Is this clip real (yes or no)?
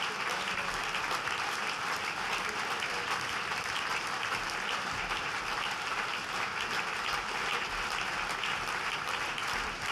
yes